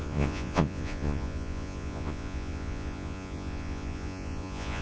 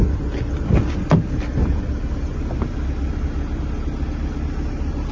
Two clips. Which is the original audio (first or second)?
second